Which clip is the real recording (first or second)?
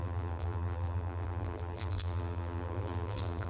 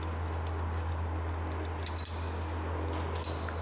second